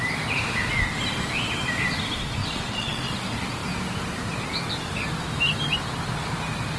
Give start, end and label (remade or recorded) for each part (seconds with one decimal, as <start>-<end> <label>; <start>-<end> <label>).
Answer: 0.0-2.4 recorded; 2.4-3.1 remade; 3.1-6.8 recorded